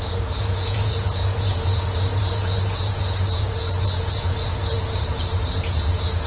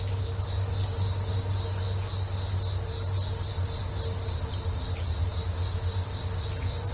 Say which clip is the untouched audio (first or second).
second